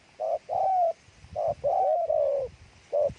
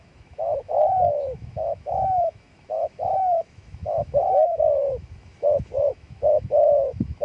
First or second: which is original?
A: first